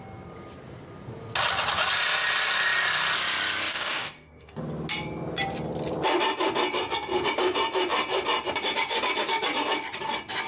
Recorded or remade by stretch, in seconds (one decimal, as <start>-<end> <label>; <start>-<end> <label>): 0.0-3.7 recorded; 3.7-4.6 remade; 4.6-10.5 recorded